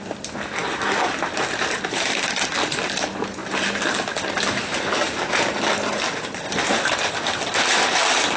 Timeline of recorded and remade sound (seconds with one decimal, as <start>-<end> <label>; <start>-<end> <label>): 0.0-3.4 remade; 3.4-6.8 recorded; 6.8-8.4 remade